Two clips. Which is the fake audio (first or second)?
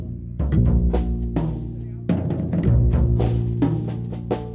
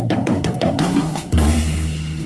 second